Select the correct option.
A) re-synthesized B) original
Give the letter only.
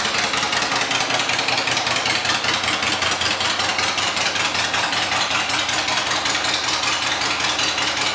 B